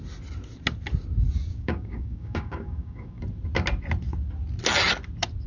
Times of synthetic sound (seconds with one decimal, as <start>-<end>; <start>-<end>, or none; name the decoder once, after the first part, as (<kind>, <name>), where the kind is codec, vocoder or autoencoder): 1.5-3.2 (codec, DAC)